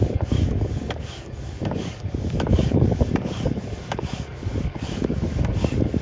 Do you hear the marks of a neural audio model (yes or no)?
yes